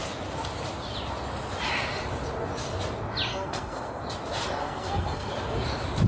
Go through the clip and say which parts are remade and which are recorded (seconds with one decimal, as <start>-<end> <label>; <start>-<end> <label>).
0.0-3.3 recorded; 3.3-4.0 remade; 4.0-4.6 recorded; 4.6-5.3 remade; 5.3-6.1 recorded